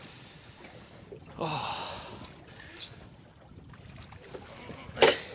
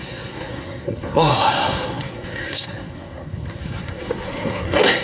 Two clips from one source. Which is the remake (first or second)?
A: second